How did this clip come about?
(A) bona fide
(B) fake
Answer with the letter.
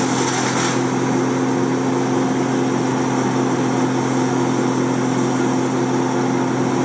A